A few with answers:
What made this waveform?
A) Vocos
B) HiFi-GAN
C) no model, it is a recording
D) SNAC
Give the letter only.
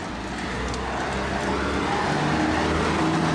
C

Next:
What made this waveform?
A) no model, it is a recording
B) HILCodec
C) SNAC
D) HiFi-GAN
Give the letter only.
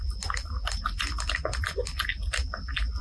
A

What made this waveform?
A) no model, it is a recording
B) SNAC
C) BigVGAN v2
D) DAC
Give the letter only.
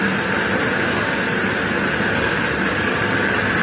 C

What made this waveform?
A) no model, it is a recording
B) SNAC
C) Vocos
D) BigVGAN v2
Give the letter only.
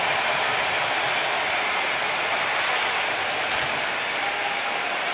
A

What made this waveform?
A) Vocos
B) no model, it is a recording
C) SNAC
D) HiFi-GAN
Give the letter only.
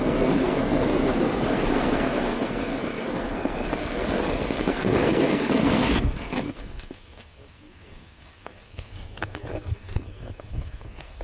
C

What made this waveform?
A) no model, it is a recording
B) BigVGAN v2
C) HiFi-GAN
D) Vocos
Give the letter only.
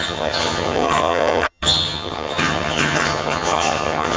C